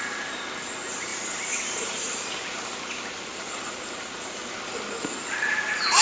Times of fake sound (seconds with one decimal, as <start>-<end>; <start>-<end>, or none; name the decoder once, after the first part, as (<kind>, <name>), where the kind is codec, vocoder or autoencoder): none